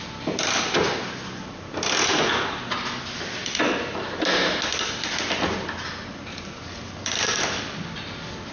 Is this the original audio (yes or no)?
yes